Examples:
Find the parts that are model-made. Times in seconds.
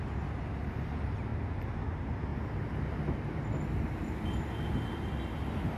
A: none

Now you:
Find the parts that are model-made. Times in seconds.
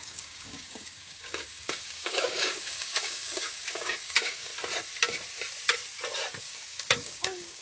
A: 0.0-4.5 (codec, DAC); 6.4-7.6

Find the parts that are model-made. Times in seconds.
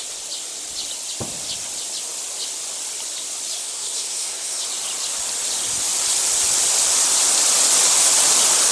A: 3.6-4.6 (codec, SNAC)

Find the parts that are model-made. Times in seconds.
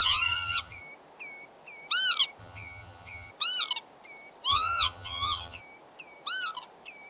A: 0.0-0.8 (vocoder, HiFi-GAN); 2.4-3.3; 4.5-5.6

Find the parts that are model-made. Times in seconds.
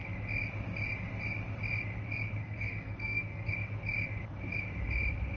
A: 2.4-3.5 (codec, SNAC)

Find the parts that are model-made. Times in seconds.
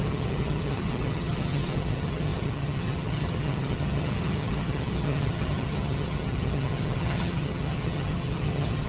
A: 0.0-8.9 (vocoder, HiFi-GAN)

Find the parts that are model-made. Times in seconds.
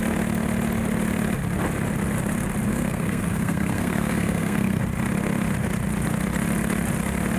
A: 2.7-4.8 (codec, SNAC)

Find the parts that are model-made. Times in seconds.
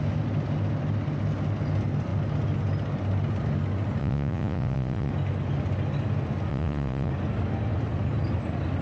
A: 4.0-5.1 (vocoder, Vocos); 6.5-7.1